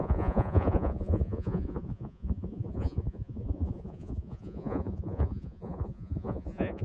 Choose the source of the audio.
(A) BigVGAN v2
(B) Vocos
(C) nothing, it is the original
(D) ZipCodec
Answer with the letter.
B